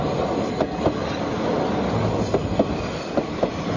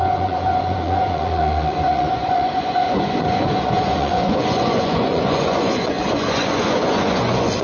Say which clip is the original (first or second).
first